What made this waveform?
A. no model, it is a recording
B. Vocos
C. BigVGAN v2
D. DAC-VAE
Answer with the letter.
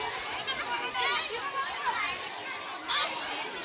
A